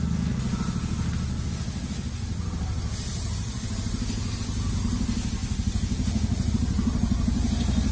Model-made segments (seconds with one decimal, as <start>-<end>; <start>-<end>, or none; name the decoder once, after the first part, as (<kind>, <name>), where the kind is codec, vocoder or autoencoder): none